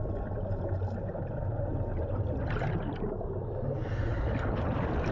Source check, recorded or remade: recorded